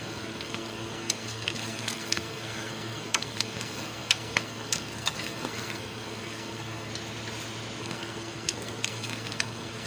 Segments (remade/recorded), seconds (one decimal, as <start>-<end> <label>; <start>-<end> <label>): 0.0-6.9 remade; 6.9-7.8 recorded; 7.8-9.9 remade